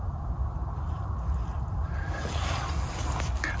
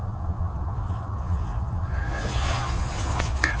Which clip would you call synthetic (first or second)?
second